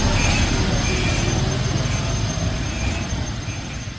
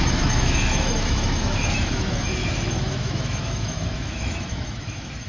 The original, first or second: first